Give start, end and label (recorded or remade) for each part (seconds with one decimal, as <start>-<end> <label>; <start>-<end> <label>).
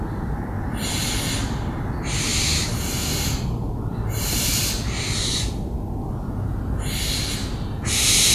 0.0-2.3 recorded; 2.3-3.1 remade; 3.1-8.3 recorded